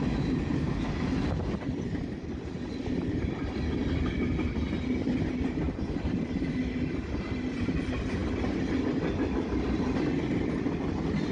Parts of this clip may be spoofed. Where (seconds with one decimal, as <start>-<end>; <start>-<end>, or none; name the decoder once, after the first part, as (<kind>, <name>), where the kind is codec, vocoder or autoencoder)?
none